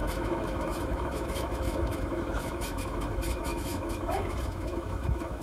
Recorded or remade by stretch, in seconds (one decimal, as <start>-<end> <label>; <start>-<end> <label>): 0.0-5.4 remade